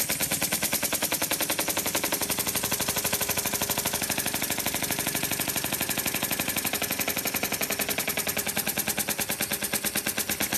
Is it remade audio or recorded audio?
recorded